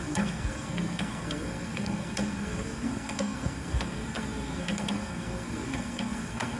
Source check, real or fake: fake